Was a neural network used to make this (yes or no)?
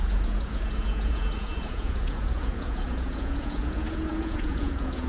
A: yes